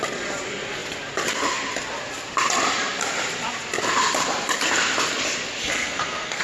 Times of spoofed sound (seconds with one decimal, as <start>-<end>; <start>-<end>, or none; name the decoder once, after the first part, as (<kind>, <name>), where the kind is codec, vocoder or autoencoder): 5.6-6.4 (codec, SNAC)